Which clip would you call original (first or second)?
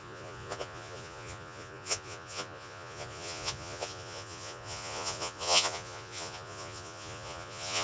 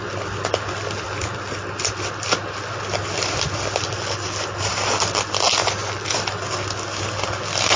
second